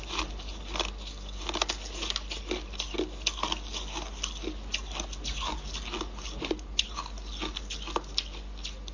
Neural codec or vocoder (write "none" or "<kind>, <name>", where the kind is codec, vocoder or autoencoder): none